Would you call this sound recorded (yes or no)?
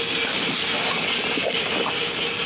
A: yes